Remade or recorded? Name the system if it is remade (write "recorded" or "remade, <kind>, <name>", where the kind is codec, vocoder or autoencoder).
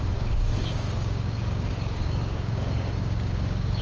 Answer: remade, codec, DAC